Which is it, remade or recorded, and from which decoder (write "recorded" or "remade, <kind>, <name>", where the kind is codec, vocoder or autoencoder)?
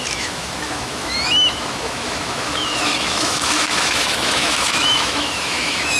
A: remade, autoencoder, DAC-VAE